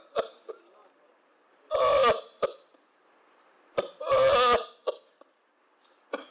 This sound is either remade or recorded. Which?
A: recorded